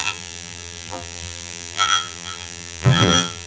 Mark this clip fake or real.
fake